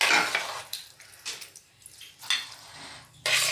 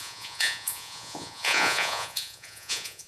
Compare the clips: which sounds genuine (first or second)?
first